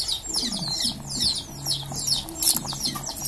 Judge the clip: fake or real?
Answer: real